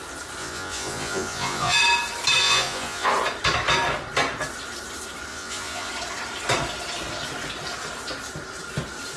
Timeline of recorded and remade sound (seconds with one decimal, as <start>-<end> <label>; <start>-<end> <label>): 0.0-0.4 recorded; 0.4-1.8 remade; 1.8-2.4 recorded; 2.4-3.1 remade; 3.1-5.3 recorded; 5.3-5.9 remade; 5.9-9.2 recorded